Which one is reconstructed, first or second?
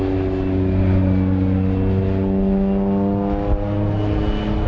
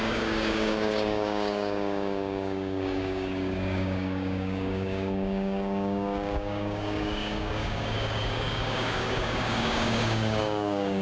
second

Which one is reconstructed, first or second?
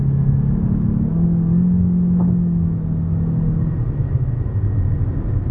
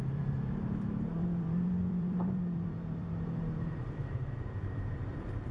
second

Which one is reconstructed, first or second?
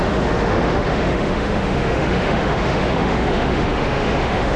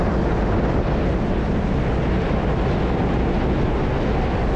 first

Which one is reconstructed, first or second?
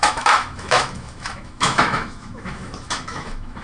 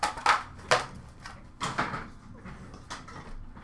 first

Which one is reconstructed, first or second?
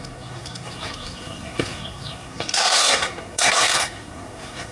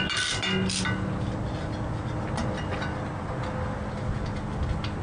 first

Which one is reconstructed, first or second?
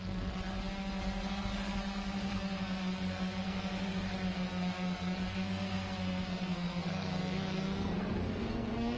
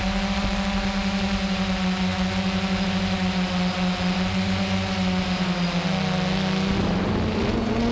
first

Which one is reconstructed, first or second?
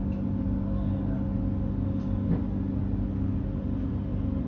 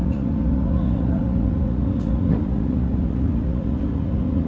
second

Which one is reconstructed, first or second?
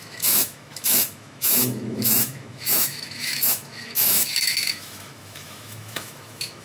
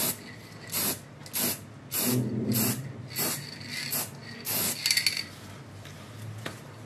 first